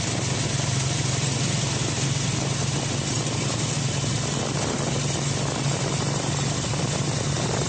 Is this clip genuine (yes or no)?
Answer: yes